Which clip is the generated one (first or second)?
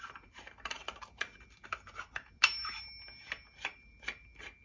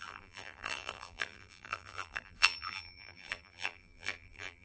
second